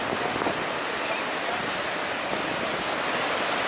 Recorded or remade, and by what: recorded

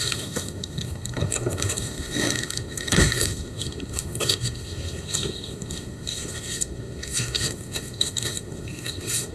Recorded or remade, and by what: remade, codec, SNAC